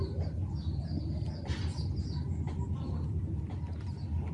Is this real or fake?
real